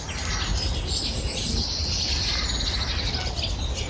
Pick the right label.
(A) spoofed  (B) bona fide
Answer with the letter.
B